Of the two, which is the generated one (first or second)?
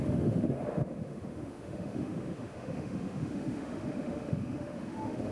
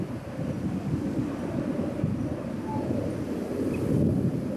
first